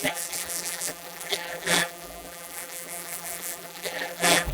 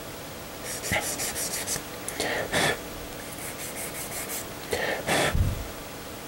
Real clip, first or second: second